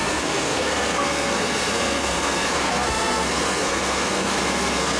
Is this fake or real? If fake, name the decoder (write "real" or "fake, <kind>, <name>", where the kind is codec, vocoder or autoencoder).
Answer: fake, codec, SNAC